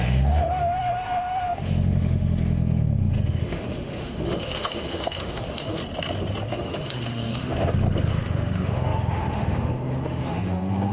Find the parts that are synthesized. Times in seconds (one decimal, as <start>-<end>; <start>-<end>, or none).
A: 0.0-5.8; 6.5-7.5; 8.1-10.9